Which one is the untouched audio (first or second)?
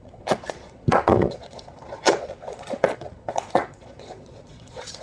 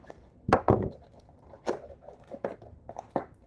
second